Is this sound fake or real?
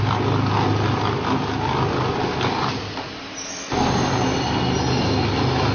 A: real